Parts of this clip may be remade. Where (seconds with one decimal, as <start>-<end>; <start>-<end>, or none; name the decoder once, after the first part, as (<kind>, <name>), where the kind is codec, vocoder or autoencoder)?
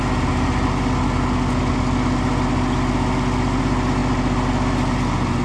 none